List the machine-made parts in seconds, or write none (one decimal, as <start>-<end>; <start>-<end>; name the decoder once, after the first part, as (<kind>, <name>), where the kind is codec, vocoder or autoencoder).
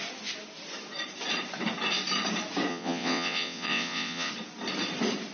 2.7-4.3 (vocoder, WaveNeXt)